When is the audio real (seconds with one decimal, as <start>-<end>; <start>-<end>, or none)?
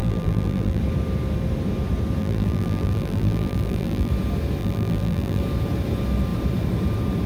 0.8-2.2; 4.1-4.6; 5.4-7.3